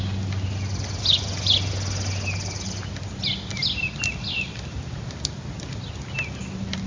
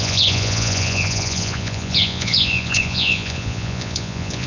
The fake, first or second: second